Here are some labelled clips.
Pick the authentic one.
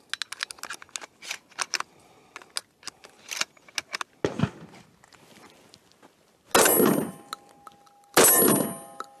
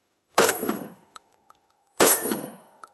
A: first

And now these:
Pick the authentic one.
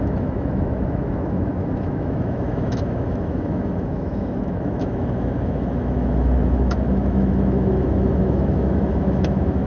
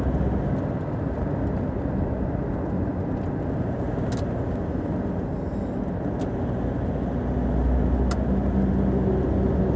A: second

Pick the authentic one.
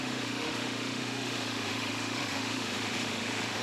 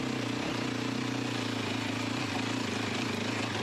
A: second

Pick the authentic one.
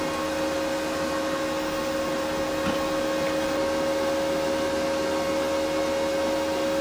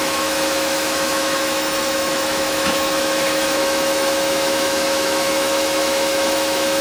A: first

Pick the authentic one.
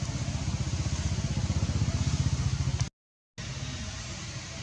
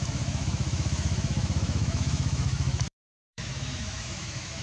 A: first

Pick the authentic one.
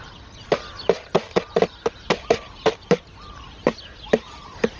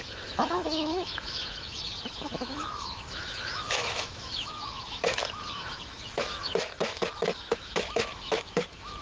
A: first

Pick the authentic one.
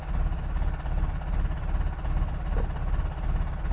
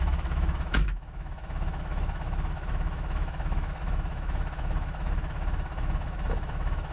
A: first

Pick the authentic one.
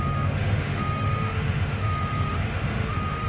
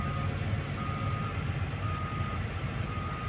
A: second